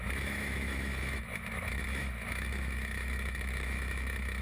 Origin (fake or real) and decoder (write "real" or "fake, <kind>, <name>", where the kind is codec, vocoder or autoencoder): fake, autoencoder, DAC-VAE